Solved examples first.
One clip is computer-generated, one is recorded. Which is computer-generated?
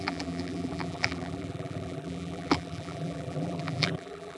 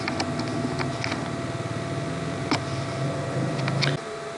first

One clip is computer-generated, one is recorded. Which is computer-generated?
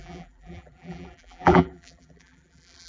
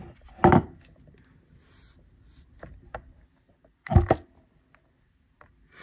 first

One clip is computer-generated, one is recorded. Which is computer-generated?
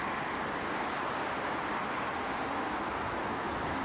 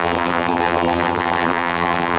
second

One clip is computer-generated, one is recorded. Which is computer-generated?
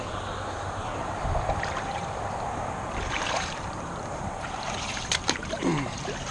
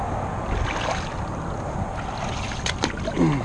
first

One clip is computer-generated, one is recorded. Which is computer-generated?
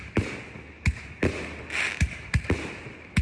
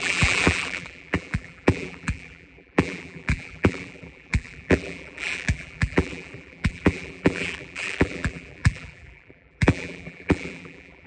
second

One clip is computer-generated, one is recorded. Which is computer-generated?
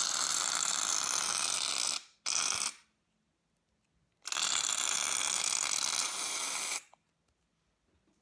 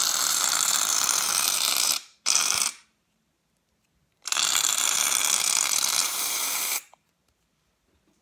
second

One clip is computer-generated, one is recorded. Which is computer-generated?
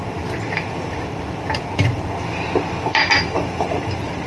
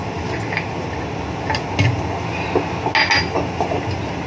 first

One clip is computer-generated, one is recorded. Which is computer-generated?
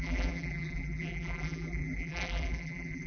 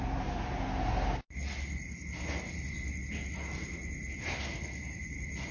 first